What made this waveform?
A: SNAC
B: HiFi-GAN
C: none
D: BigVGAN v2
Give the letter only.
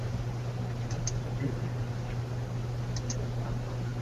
C